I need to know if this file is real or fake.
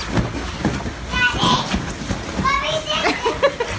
real